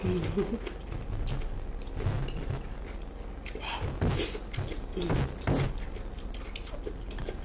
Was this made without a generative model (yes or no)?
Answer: yes